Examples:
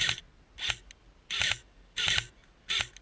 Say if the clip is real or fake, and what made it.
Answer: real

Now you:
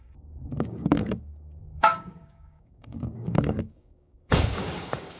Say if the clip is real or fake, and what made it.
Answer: fake, codec, DAC